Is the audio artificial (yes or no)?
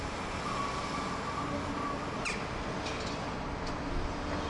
no